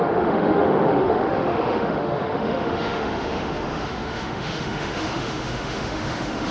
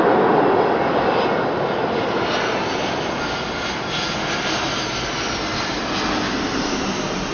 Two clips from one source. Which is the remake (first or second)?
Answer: first